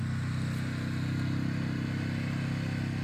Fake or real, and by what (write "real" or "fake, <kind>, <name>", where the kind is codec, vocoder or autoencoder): real